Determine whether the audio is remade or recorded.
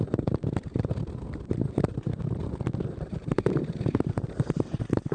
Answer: remade